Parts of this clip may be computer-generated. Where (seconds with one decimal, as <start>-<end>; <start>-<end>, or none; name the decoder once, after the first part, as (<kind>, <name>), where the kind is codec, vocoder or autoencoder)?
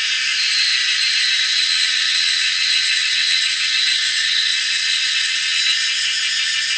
1.5-5.6 (vocoder, WaveNeXt)